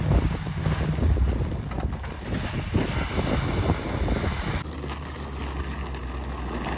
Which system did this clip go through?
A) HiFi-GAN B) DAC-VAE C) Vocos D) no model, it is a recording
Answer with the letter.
D